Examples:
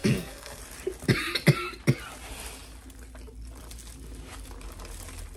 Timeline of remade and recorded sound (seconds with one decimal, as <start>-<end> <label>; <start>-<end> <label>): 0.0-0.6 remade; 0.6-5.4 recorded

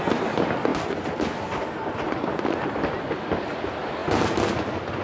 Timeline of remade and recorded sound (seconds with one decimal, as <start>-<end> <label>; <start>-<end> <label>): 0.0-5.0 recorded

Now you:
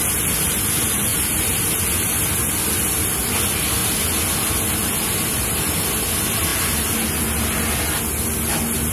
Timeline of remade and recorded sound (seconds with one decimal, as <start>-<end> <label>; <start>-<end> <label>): 0.0-8.9 recorded